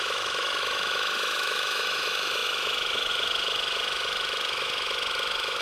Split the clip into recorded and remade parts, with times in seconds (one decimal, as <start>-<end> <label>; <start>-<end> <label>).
0.0-5.6 remade